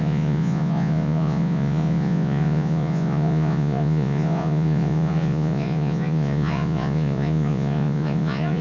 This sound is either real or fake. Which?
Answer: fake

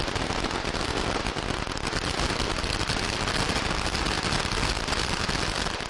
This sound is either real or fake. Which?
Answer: real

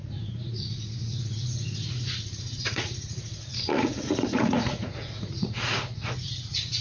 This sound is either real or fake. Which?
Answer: fake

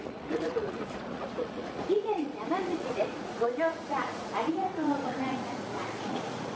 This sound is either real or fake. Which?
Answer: fake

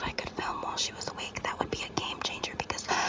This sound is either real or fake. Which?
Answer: fake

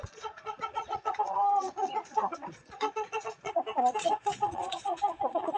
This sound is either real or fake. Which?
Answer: fake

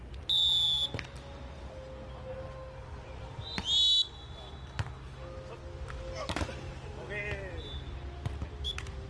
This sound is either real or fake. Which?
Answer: real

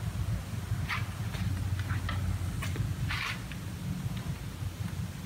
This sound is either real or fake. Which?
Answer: real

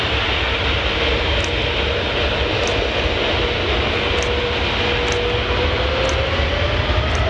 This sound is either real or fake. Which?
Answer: real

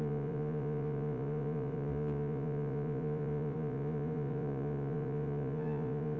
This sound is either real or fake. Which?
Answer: fake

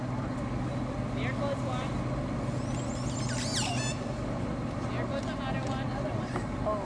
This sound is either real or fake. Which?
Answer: real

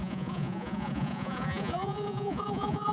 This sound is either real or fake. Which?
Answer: fake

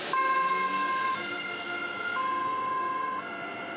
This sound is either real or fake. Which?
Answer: real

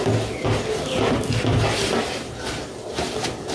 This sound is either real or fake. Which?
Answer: real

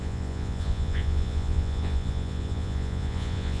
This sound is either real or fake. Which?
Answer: fake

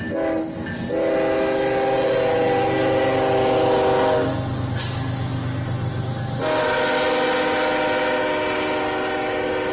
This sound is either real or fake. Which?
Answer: real